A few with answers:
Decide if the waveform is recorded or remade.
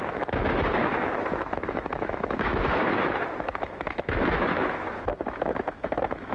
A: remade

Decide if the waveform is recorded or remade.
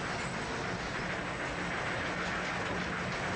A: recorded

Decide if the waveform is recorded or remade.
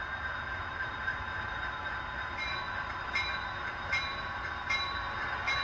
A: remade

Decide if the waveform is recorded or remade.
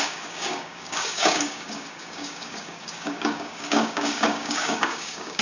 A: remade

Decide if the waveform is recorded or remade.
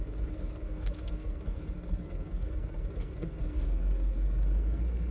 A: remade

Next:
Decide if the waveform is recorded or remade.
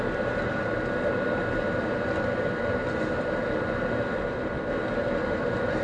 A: recorded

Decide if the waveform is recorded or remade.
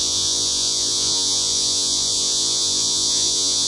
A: remade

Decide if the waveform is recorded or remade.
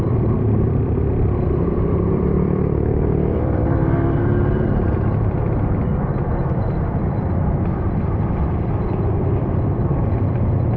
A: remade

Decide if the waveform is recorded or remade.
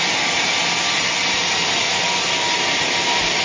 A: recorded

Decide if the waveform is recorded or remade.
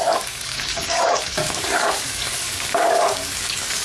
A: remade